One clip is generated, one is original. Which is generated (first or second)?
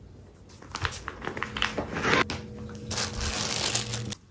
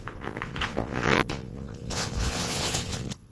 second